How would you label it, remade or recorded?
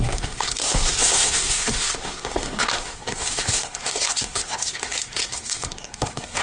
remade